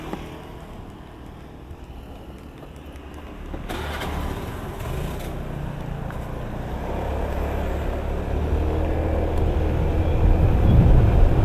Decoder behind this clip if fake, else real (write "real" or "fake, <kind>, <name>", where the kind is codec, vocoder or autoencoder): real